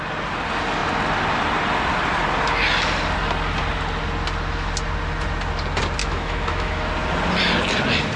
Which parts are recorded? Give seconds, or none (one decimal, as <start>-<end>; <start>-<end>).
0.0-6.0; 6.9-8.2